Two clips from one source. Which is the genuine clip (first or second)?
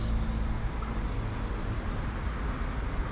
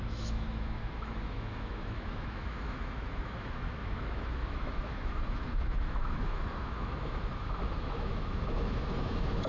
first